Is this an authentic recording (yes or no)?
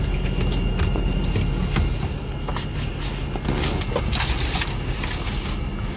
yes